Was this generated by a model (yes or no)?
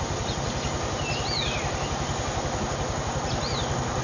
no